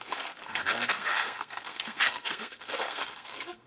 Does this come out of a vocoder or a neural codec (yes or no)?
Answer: yes